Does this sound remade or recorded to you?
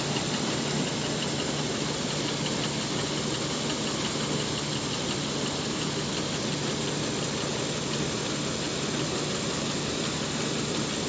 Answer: recorded